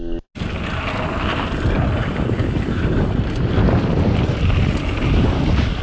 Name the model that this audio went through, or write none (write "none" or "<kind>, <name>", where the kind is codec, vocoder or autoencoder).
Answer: none